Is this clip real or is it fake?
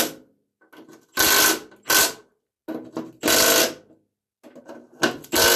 real